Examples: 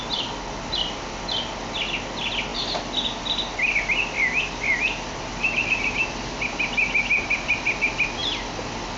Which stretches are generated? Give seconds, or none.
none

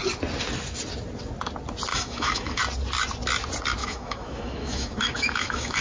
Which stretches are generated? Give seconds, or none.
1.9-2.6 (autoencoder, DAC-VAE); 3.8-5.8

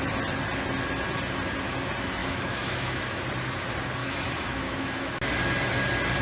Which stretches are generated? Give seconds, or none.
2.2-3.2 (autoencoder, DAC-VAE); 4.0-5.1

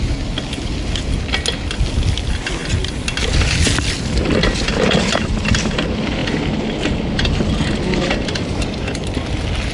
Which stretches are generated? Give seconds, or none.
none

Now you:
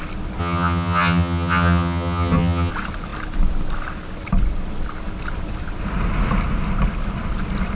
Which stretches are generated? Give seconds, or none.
0.4-2.7 (vocoder, HiFi-GAN)

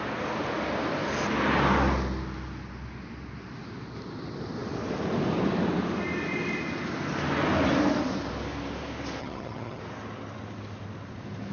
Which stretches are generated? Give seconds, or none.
9.2-9.8 (vocoder, HiFi-GAN)